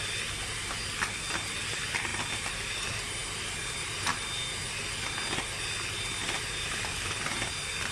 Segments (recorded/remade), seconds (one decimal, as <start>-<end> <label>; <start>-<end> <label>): 0.0-7.9 recorded